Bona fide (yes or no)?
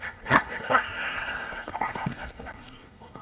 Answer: no